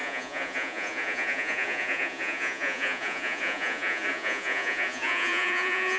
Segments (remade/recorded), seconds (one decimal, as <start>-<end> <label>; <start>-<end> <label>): 0.0-6.0 remade